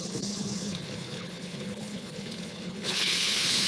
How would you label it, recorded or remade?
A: remade